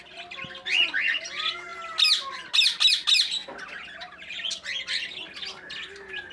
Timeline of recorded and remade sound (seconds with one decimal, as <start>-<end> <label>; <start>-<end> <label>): 0.0-6.3 recorded